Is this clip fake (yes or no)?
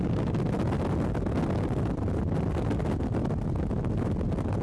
no